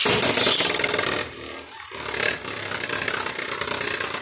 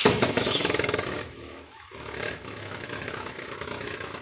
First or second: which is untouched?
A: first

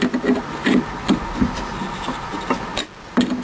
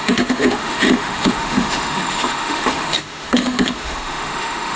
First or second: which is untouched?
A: first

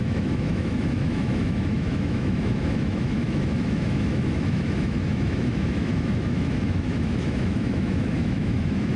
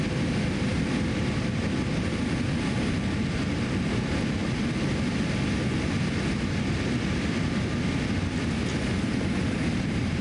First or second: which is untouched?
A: second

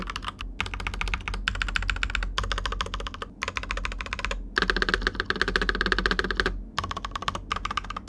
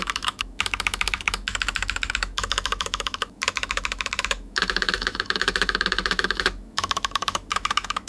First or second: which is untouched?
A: first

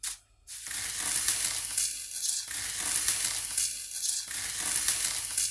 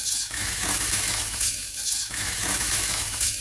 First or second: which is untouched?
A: first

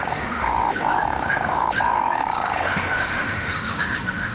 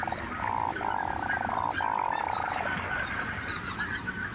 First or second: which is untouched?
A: second